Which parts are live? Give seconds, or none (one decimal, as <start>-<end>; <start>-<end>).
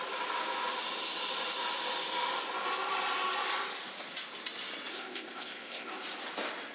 0.0-4.9; 5.9-6.7